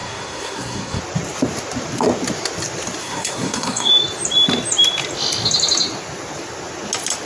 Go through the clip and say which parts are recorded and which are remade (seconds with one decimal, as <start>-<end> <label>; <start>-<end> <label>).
0.0-1.0 remade; 1.0-3.0 recorded; 3.0-3.9 remade; 3.9-7.3 recorded